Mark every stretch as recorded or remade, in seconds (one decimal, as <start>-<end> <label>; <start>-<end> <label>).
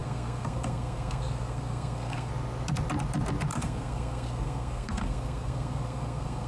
0.0-2.3 remade; 2.3-3.5 recorded; 3.5-6.5 remade